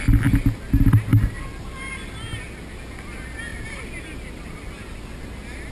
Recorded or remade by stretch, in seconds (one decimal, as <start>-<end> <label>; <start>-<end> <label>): 0.0-5.7 recorded